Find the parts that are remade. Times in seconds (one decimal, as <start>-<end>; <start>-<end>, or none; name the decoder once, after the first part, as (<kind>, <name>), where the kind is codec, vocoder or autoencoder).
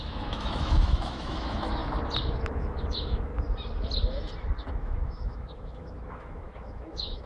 0.0-1.8 (autoencoder, DAC-VAE); 2.5-3.3; 4.7-7.3